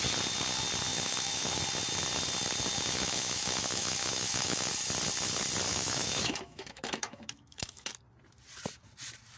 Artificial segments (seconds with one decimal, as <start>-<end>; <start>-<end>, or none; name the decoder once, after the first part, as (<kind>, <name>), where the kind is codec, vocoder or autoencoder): 0.9-1.6 (autoencoder, DAC-VAE); 2.7-4.7; 5.7-7.9